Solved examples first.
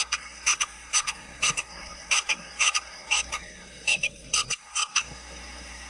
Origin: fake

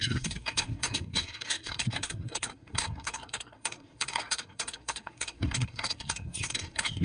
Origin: fake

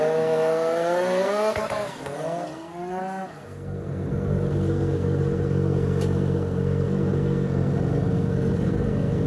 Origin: fake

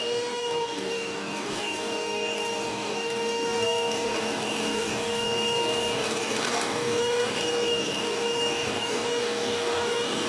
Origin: fake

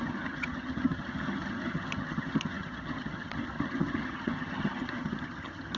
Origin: fake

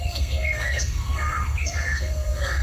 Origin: fake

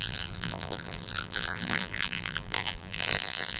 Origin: fake